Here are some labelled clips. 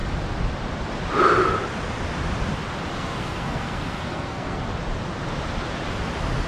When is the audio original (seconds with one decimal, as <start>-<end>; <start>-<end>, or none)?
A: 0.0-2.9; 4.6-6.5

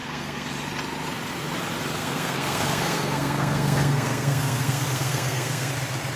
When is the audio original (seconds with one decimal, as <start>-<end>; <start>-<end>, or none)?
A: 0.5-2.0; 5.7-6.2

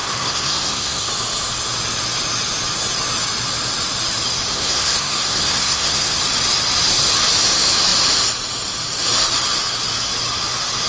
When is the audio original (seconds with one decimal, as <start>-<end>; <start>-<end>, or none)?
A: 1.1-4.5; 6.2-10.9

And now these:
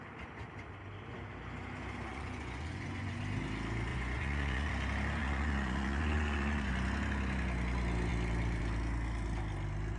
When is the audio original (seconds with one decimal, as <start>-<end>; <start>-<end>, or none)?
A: 0.0-2.1; 3.2-3.9; 4.7-5.2; 6.7-10.0

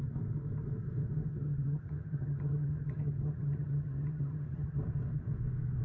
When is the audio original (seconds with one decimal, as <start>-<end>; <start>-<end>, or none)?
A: 0.0-1.3; 4.8-5.8

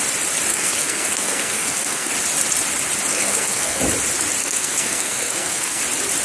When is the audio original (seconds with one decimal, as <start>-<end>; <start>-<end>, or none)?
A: 0.0-0.5; 2.1-3.1; 3.8-4.4; 5.8-6.2

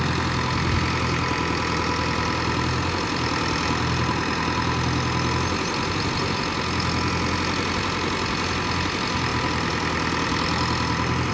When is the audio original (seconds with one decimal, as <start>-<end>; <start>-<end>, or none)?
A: 0.0-11.3

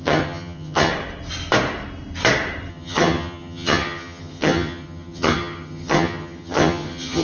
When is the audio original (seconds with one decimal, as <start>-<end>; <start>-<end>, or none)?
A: 0.9-2.7